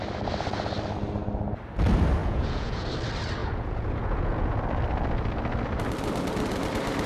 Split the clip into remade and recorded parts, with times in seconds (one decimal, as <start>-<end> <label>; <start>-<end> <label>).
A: 0.0-2.2 recorded; 2.2-2.9 remade; 2.9-3.4 recorded; 3.4-4.6 remade; 4.6-7.1 recorded